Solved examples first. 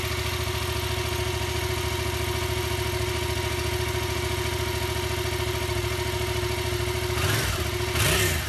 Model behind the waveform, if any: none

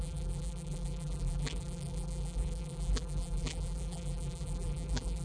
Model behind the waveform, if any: vocoder, BigVGAN v2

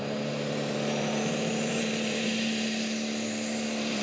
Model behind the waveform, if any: vocoder, BigVGAN v2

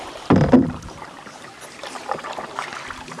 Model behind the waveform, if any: none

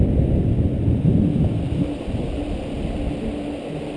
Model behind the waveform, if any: none